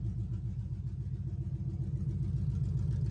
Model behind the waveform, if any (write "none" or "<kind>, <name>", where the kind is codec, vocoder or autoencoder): none